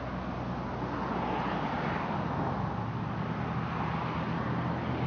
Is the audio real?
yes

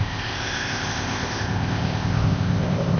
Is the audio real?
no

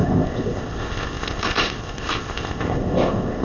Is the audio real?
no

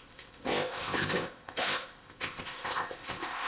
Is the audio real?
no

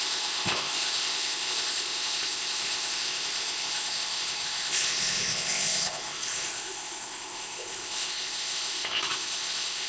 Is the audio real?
no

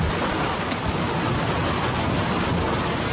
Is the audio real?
yes